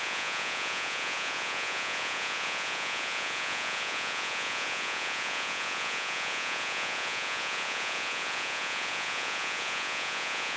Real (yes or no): no